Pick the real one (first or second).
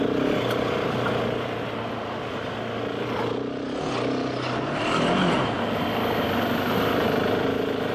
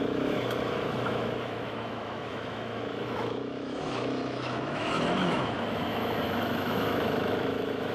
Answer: first